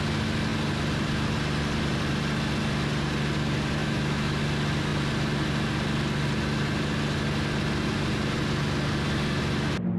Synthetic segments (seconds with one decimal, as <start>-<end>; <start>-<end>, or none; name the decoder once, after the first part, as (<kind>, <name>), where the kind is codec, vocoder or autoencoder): 3.8-4.4 (autoencoder, DAC-VAE)

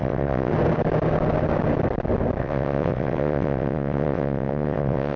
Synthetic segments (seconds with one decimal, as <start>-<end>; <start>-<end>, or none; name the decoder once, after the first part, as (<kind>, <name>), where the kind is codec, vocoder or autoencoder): 0.0-0.5 (vocoder, WaveNeXt); 2.4-5.2

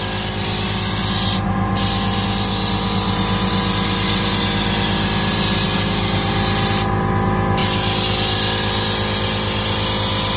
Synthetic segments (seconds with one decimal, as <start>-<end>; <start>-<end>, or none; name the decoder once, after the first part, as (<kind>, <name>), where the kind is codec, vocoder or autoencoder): none

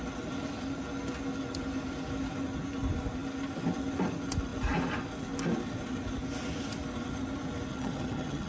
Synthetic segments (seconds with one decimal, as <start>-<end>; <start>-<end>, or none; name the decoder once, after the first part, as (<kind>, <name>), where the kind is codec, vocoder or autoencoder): 7.7-8.5 (vocoder, HiFi-GAN)

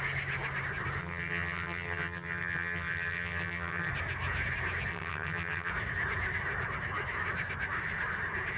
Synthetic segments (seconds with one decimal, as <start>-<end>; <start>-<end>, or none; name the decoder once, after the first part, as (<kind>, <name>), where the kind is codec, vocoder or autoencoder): 1.0-3.9 (vocoder, HiFi-GAN); 4.9-5.7

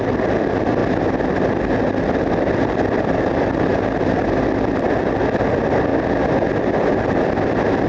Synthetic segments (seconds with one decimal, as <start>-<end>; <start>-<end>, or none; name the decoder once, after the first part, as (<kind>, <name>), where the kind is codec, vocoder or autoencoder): 0.0-0.8 (vocoder, BigVGAN v2); 2.0-3.7; 4.2-5.9; 6.6-7.9